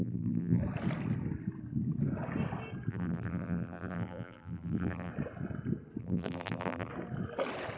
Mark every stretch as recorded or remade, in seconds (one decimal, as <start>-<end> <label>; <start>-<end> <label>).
0.0-0.6 remade; 0.6-2.9 recorded; 2.9-5.1 remade; 5.1-6.0 recorded; 6.0-6.9 remade; 6.9-7.8 recorded